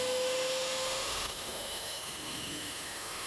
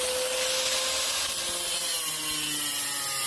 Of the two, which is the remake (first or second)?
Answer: first